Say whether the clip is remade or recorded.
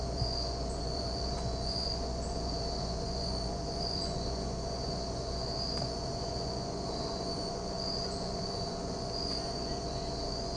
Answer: remade